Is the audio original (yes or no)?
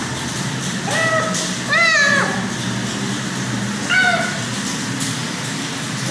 yes